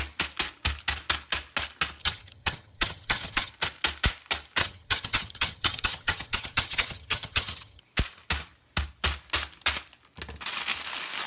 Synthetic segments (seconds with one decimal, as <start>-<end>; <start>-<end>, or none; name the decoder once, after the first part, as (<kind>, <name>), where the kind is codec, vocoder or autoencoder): 2.0-3.5 (vocoder, HiFi-GAN); 4.6-7.8